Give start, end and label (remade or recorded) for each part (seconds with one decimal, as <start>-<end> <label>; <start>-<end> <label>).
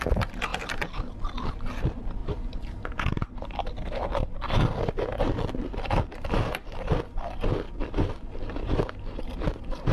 0.0-2.2 recorded; 2.2-3.3 remade; 3.3-9.9 recorded